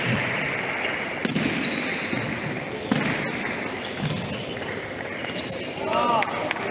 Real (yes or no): yes